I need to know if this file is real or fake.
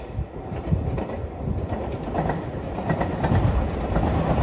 real